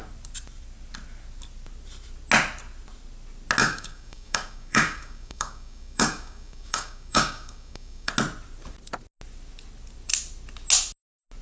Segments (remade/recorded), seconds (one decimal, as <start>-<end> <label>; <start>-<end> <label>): 0.0-3.6 recorded; 3.6-8.1 remade; 8.1-11.4 recorded